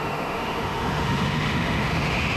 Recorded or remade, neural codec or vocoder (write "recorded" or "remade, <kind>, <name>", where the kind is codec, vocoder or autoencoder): remade, autoencoder, DAC-VAE